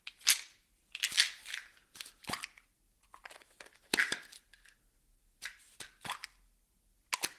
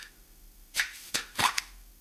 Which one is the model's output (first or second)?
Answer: second